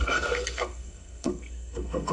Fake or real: fake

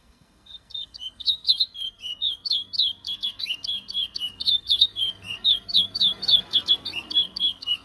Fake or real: fake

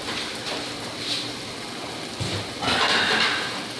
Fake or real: real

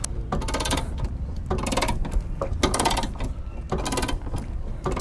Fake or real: real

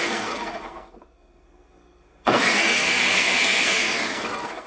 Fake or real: fake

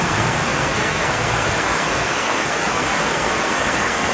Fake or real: fake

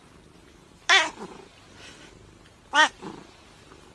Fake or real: real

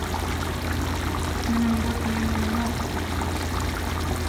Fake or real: real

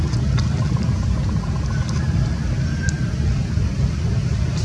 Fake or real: real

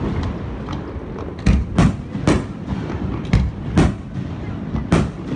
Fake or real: real